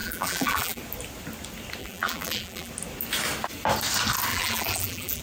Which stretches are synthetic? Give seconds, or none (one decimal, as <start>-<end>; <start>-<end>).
0.0-0.8; 1.8-2.7; 4.3-5.2

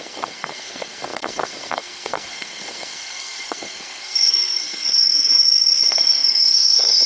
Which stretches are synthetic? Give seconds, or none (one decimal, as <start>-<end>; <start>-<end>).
0.0-7.1

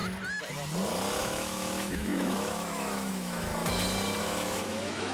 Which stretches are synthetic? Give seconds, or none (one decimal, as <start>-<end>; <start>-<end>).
1.2-3.5; 4.2-5.1

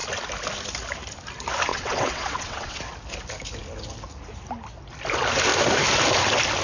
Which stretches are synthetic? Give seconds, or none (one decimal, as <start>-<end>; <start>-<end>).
1.7-2.8

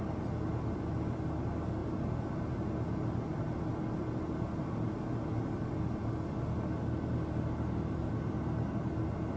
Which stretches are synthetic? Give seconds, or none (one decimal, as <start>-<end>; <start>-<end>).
none

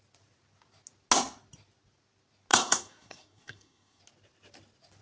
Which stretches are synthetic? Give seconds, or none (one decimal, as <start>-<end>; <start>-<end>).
2.5-4.0

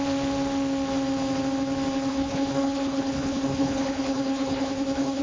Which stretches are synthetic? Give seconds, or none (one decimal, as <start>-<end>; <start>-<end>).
2.1-5.2